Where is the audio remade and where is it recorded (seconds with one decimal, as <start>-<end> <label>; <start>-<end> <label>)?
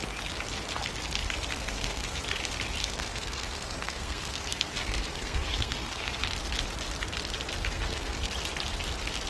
0.0-1.5 recorded; 1.5-2.2 remade; 2.2-2.8 recorded; 2.8-6.2 remade; 6.2-7.7 recorded; 7.7-8.3 remade; 8.3-9.3 recorded